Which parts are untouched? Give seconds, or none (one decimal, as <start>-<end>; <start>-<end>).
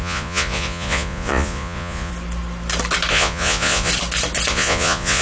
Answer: 2.1-3.1; 3.9-4.5